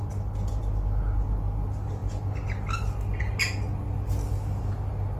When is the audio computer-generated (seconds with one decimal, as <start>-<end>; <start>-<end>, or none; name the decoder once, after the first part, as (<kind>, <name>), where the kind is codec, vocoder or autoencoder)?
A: none